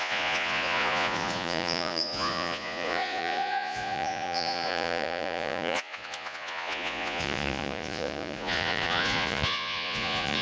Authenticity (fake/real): fake